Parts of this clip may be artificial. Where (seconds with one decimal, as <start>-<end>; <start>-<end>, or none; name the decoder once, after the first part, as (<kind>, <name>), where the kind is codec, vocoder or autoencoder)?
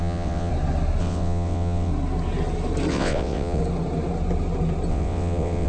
0.0-0.5 (vocoder, WaveNeXt); 1.0-1.9; 2.9-3.6; 4.9-5.7